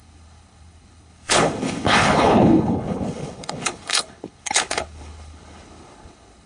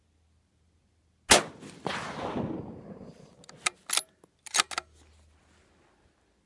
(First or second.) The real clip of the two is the second